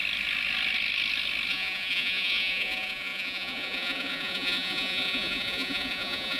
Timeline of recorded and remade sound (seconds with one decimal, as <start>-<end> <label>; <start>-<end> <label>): 0.0-1.5 recorded; 1.5-6.4 remade